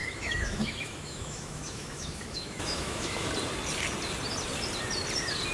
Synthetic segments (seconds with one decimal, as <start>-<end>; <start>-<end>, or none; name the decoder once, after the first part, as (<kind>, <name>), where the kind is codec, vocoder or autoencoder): 0.0-3.3 (autoencoder, DAC-VAE)